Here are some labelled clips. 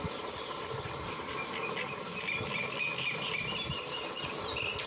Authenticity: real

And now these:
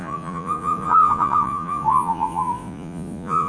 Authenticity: fake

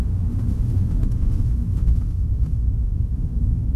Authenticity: fake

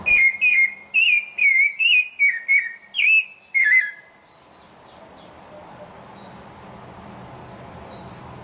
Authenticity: real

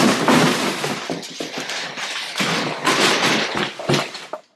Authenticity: real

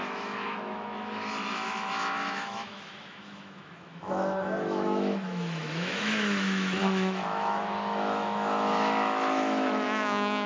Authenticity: fake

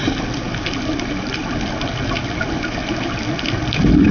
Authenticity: real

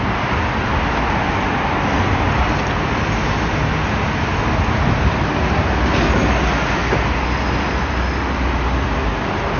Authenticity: real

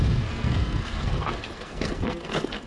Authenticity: fake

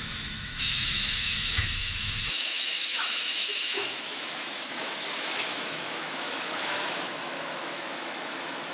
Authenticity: fake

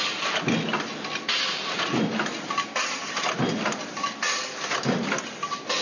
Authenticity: real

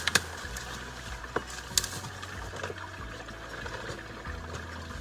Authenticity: real